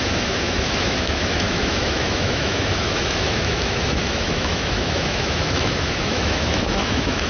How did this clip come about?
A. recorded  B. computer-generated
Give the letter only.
B